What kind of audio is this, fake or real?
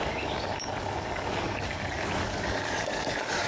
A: fake